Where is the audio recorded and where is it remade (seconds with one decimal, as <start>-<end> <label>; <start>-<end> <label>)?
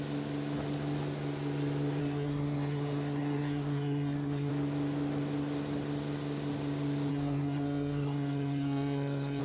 0.0-2.0 recorded; 2.0-4.5 remade; 4.5-7.1 recorded; 7.1-9.4 remade